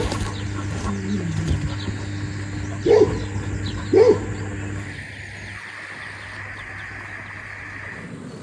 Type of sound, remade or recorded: recorded